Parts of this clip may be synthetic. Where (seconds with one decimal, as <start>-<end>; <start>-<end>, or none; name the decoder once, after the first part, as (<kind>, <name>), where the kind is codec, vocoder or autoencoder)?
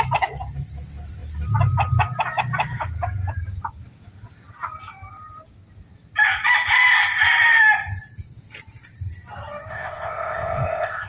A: 9.7-11.1 (codec, ZipCodec)